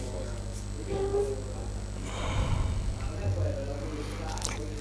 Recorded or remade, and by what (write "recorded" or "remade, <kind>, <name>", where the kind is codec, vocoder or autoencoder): recorded